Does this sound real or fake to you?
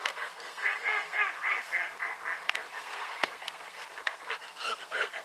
fake